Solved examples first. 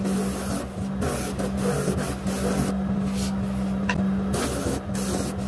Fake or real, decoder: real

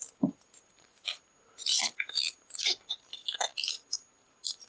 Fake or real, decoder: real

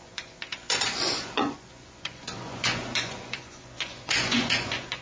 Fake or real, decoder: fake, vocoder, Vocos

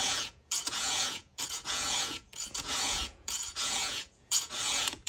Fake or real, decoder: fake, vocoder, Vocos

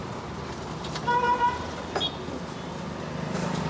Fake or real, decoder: real